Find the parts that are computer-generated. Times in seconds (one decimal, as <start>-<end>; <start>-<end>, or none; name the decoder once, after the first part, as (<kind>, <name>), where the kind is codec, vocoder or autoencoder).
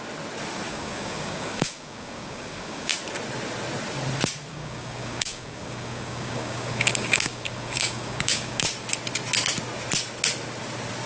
0.7-2.9 (codec, DAC); 4.5-8.7